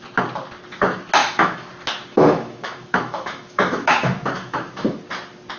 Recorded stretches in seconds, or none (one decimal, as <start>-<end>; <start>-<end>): 0.0-1.2; 1.7-2.1; 5.0-5.6